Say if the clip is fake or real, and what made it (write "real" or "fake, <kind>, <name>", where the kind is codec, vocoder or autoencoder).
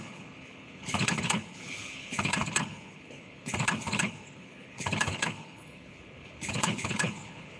fake, codec, HILCodec